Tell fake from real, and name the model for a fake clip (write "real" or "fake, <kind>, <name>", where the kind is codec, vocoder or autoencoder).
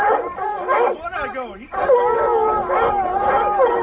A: real